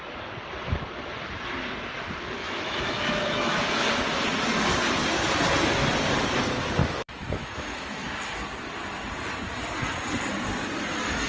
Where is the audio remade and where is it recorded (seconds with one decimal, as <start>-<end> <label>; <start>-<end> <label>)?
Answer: 0.0-2.4 recorded; 2.4-3.9 remade; 3.9-6.8 recorded; 6.8-8.2 remade; 8.2-11.3 recorded